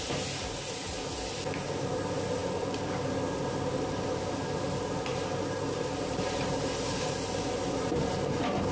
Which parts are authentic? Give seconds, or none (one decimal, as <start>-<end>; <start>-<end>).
0.0-8.7

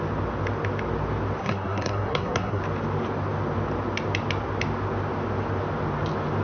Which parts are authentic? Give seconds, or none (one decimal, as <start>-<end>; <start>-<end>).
0.0-1.4; 2.6-6.4